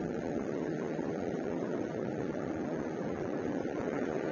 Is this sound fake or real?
fake